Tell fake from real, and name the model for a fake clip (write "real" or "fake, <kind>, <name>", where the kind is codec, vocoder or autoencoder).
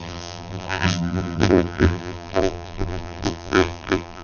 fake, vocoder, BigVGAN v2